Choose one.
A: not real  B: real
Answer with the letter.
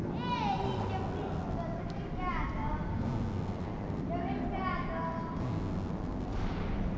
B